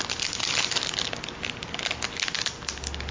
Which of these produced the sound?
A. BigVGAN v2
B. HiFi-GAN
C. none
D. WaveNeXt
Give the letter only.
C